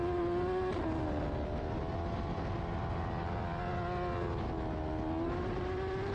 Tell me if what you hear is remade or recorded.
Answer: recorded